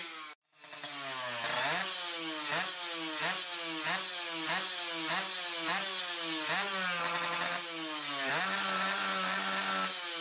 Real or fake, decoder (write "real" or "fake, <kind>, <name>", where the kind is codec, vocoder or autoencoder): real